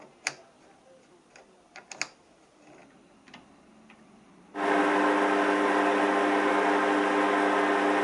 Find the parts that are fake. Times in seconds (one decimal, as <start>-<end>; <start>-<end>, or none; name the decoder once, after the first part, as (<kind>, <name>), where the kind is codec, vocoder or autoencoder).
none